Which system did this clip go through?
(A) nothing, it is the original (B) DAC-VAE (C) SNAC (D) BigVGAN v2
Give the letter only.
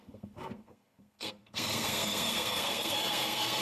C